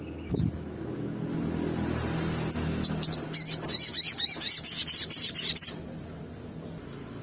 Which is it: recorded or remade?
recorded